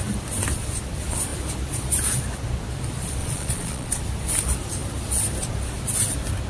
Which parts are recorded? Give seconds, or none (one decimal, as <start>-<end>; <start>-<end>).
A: 0.0-3.2; 3.9-6.5